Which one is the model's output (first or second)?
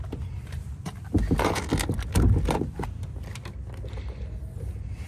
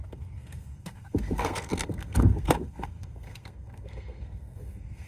second